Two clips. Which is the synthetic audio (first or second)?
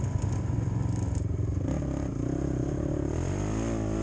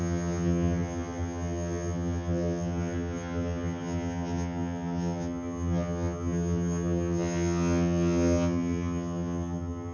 second